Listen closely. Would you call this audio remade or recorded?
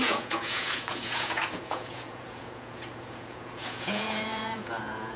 remade